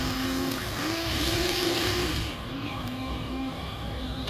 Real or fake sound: fake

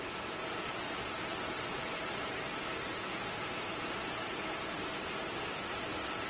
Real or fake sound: real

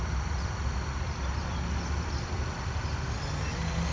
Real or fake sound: real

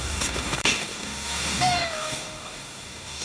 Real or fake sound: fake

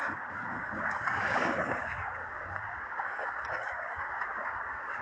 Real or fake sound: fake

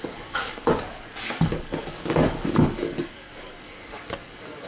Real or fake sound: fake